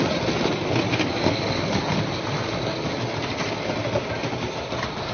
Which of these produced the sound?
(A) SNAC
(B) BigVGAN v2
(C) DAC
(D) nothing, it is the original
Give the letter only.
D